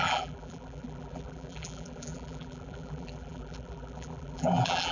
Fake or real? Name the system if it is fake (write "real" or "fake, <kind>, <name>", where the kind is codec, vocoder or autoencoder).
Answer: fake, vocoder, BigVGAN v2